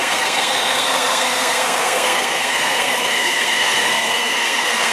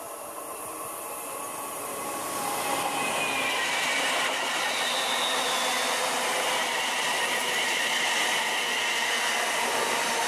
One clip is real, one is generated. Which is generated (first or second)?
first